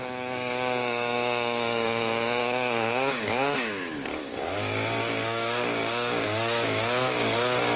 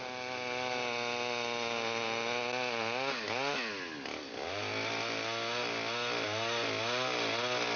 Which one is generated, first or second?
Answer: first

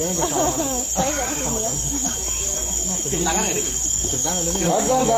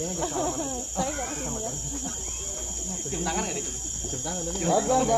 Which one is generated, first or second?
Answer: first